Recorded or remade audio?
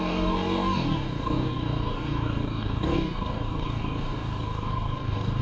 remade